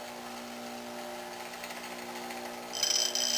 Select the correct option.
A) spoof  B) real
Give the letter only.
B